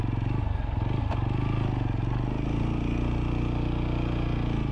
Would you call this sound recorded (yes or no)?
yes